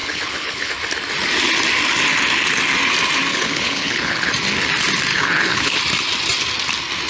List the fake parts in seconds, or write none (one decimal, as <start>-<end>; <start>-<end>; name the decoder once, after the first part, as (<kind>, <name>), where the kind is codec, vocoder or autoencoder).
0.0-0.7 (codec, HILCodec); 3.3-4.3; 5.1-5.8